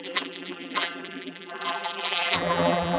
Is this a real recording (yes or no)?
no